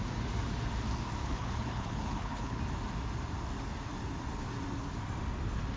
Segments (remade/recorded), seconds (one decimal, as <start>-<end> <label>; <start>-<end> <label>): 0.0-1.2 recorded; 1.2-2.6 remade; 2.6-5.8 recorded